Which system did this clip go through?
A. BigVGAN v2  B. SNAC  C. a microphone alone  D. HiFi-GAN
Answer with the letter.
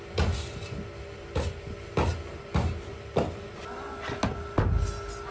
C